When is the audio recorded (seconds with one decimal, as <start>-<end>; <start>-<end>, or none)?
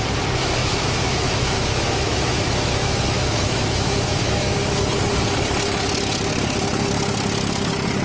0.0-0.6; 4.8-8.0